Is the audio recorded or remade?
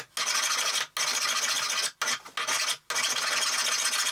recorded